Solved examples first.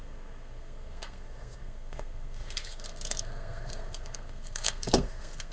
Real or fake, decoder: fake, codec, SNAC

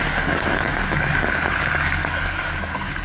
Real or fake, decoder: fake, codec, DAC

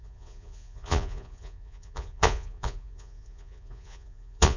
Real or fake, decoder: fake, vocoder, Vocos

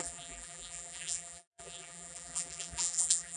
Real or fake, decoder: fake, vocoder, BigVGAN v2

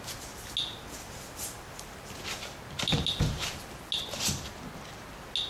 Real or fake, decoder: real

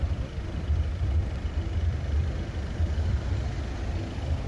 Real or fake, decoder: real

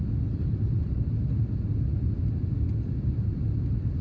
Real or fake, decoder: real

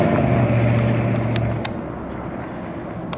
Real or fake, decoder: real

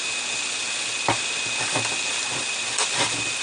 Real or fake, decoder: real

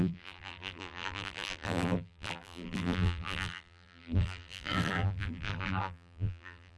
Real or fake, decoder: fake, vocoder, BigVGAN v2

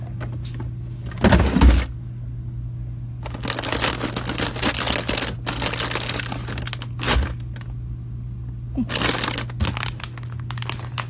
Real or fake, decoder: real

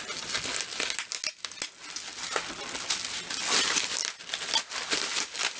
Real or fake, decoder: real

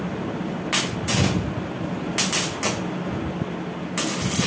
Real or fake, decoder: real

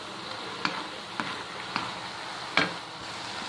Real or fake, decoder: real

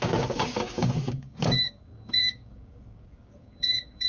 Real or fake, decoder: fake, codec, DAC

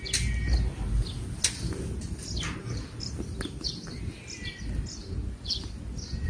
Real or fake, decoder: real